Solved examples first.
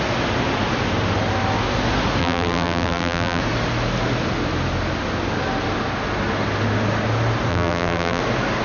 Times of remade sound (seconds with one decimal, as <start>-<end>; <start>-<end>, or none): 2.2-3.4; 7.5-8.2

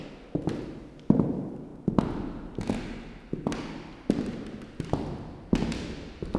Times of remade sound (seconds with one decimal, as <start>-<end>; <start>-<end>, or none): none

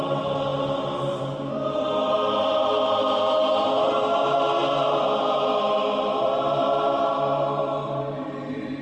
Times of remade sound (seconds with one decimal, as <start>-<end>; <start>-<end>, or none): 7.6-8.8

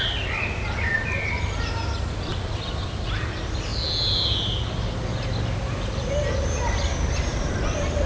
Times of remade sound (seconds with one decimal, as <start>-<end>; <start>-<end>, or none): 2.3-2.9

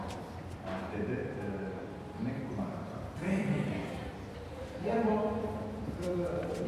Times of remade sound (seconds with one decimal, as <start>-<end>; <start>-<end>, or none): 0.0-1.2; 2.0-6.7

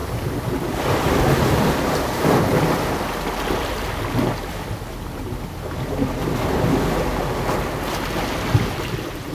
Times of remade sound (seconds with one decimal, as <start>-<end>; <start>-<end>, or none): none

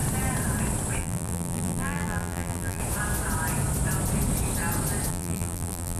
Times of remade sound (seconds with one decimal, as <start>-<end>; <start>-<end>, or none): 1.0-2.8; 5.1-6.0

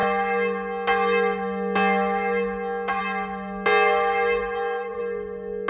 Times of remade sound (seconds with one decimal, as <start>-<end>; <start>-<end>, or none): 4.4-5.0